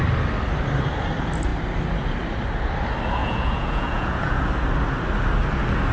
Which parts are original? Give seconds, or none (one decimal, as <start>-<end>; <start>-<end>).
0.0-3.2; 4.4-5.9